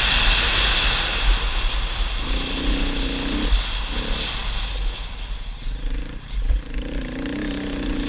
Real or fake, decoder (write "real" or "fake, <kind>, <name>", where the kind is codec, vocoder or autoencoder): real